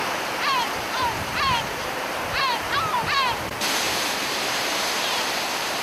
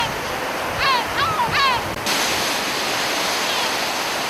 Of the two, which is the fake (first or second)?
first